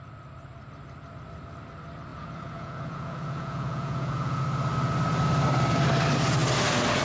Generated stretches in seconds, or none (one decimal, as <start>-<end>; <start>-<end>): 2.1-4.4